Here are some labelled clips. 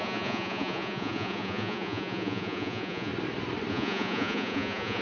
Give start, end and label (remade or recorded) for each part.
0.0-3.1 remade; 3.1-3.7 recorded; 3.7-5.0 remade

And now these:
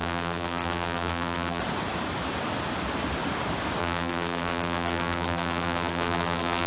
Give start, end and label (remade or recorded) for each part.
0.0-1.6 remade; 1.6-3.8 recorded; 3.8-6.7 remade

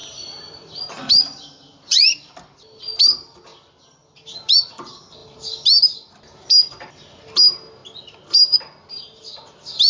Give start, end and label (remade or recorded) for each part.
0.0-2.8 remade; 2.8-3.5 recorded; 3.5-4.7 remade; 4.7-9.9 recorded

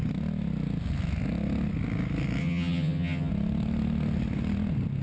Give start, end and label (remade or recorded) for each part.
0.0-2.4 recorded; 2.4-3.3 remade; 3.3-5.0 recorded

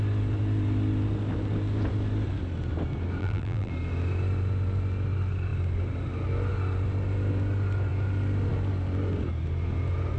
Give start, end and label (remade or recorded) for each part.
0.0-3.2 recorded; 3.2-3.7 remade; 3.7-10.2 recorded

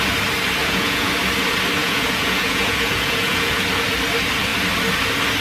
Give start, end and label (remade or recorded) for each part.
0.0-0.6 recorded; 0.6-1.1 remade; 1.1-1.8 recorded; 1.8-3.6 remade; 3.6-5.4 recorded